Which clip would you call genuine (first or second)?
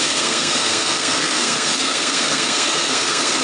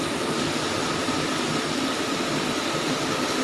second